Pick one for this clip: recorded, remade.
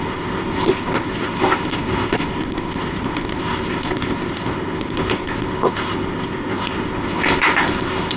remade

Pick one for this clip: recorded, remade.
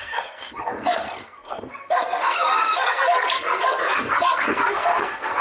remade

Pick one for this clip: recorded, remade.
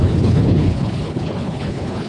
remade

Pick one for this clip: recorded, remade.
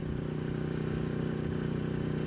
recorded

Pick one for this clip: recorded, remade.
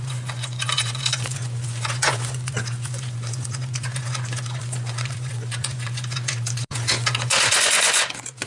remade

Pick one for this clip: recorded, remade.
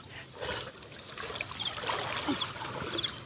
recorded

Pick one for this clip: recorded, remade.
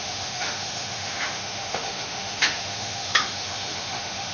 remade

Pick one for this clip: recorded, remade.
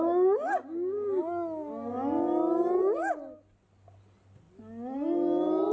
recorded